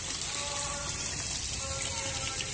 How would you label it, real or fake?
real